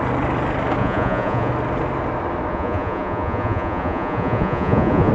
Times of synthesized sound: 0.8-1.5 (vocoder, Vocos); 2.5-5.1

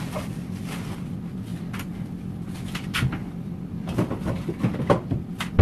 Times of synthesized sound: none

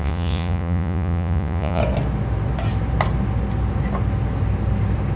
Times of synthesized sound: 0.0-1.8 (vocoder, Vocos)

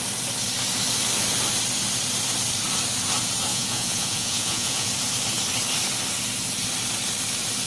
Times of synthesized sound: 3.5-4.9 (vocoder, Vocos)

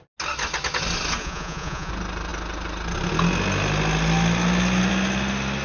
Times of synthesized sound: 1.2-1.9 (vocoder, Vocos)

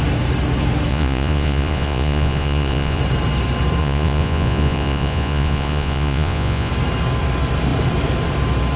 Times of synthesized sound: 0.9-3.0 (vocoder, Vocos); 3.8-6.7